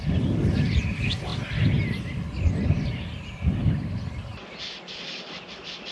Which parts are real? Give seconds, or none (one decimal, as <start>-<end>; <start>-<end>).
0.0-5.9